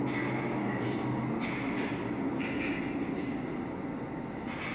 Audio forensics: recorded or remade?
recorded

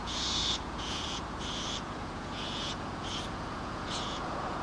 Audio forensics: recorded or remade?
remade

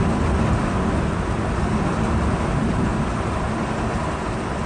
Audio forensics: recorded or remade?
recorded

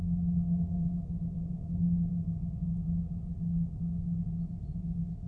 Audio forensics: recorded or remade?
recorded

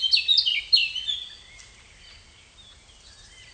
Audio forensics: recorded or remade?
recorded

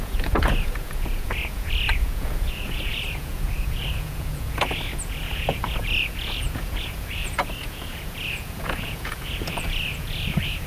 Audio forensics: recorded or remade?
remade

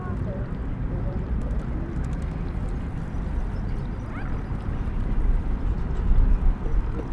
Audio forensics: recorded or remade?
recorded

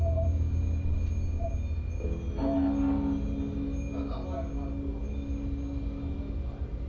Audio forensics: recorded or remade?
recorded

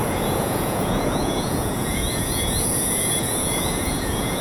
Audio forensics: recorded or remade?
remade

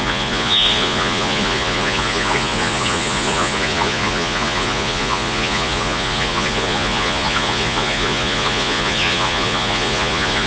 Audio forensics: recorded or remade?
remade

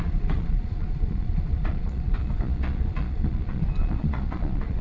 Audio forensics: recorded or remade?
remade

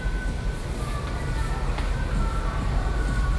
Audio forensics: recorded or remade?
recorded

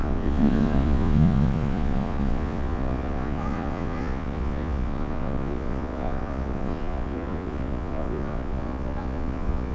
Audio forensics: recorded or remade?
remade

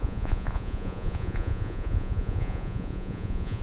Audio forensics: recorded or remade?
remade